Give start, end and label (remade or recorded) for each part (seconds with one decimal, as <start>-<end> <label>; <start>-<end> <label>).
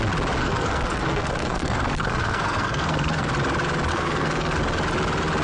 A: 0.0-0.4 recorded; 0.4-3.3 remade; 3.3-3.9 recorded; 3.9-4.6 remade; 4.6-5.4 recorded